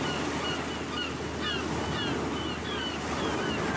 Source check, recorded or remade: recorded